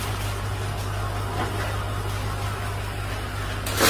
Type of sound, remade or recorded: recorded